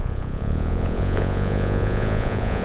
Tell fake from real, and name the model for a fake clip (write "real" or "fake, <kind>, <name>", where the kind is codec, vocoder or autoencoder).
fake, vocoder, Vocos